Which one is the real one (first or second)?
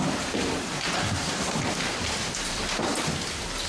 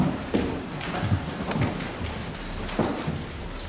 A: second